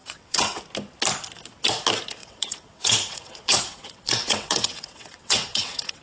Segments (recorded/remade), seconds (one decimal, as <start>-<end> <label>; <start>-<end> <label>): 0.0-0.6 remade; 0.6-2.2 recorded; 2.2-6.0 remade